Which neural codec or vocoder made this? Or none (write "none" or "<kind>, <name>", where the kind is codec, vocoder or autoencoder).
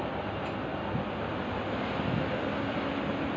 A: none